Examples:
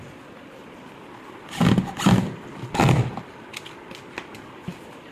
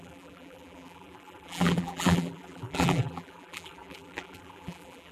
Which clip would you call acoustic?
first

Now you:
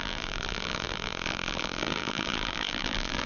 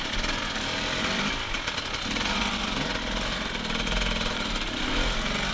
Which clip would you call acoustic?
second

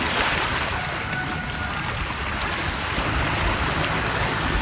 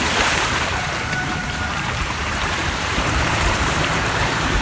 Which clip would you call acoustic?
first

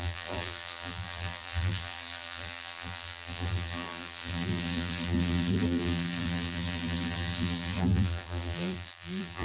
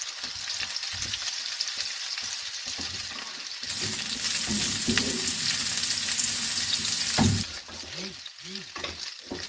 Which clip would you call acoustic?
second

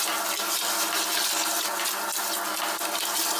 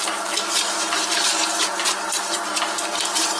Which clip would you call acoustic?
first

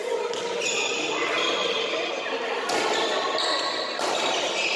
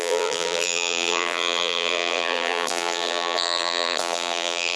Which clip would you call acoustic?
first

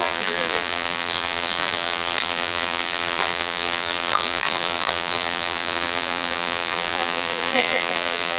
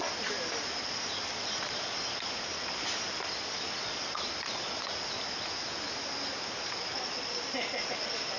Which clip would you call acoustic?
second